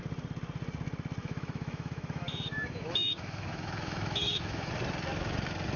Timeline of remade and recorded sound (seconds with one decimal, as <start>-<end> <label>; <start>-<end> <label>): 0.0-1.2 recorded; 1.2-4.7 remade; 4.7-5.8 recorded